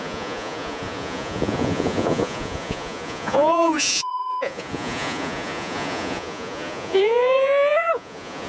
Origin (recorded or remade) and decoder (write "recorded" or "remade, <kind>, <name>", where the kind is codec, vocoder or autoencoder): remade, vocoder, Vocos